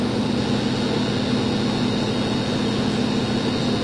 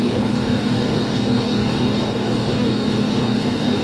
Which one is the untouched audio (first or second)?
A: first